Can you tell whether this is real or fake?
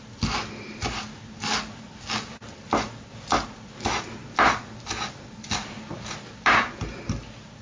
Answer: real